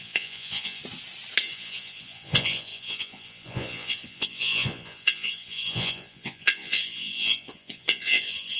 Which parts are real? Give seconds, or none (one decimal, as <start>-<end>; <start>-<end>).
0.8-1.5